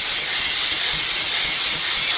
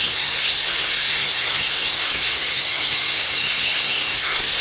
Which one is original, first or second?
first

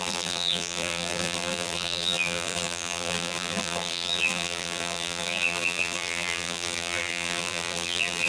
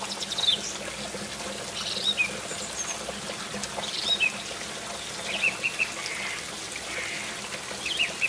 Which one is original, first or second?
second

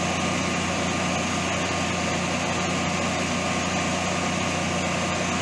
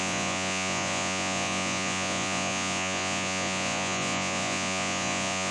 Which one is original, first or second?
first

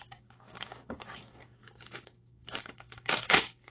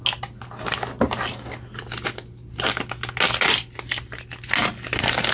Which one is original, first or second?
second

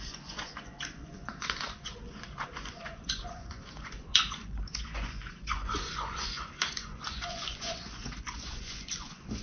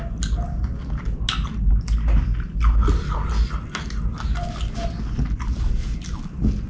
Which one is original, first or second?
second